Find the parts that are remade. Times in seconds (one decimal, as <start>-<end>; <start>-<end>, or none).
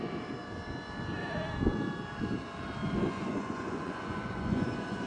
2.8-5.1